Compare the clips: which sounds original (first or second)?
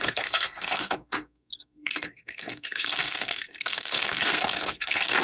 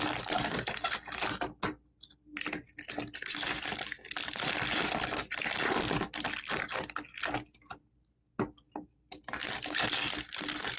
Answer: second